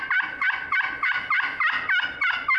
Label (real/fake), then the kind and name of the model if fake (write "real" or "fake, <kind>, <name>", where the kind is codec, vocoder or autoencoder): real